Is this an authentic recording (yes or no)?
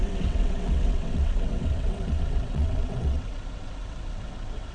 no